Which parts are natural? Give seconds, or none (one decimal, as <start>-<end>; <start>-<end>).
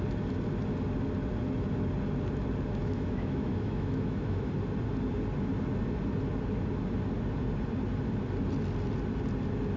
0.0-2.8; 4.5-9.8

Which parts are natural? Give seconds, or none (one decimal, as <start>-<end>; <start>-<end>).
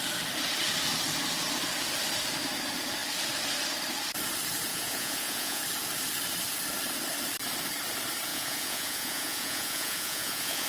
0.0-4.7; 5.6-8.3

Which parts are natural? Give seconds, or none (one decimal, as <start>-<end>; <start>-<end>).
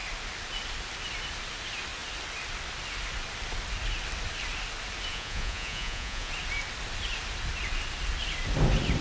0.0-5.1; 6.3-9.0